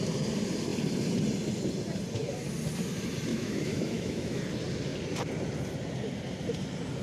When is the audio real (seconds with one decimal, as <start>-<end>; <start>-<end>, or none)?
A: 0.0-3.3; 4.4-7.0